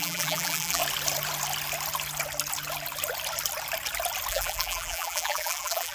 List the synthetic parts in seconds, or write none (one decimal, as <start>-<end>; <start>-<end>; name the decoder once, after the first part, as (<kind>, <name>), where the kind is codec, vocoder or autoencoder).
0.0-0.8 (vocoder, BigVGAN v2); 4.3-5.9